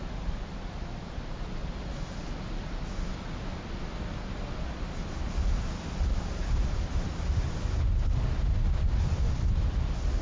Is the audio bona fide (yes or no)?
yes